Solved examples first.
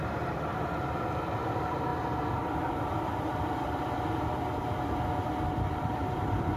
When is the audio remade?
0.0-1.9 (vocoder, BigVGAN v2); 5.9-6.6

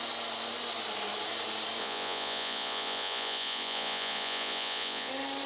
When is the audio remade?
1.8-5.1 (vocoder, Vocos)

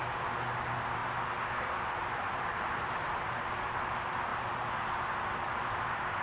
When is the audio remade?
1.0-3.8 (vocoder, BigVGAN v2); 4.3-5.1